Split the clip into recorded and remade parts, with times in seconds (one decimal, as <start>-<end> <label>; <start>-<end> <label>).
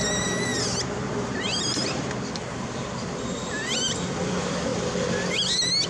0.0-5.9 recorded